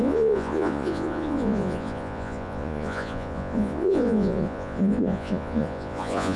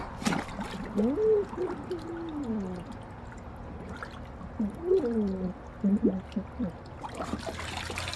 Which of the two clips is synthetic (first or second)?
first